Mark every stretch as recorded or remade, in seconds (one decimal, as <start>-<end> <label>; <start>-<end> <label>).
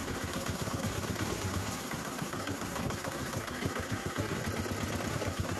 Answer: 0.0-4.4 remade; 4.4-5.1 recorded; 5.1-5.6 remade